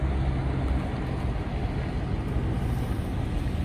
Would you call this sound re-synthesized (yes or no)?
no